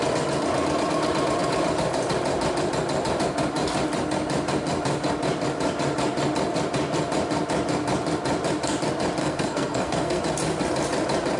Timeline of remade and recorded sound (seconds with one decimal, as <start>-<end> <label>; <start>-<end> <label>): 0.0-9.2 recorded; 9.2-10.2 remade; 10.2-11.4 recorded